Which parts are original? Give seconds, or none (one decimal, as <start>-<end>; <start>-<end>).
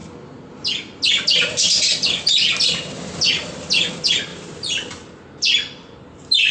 0.0-6.5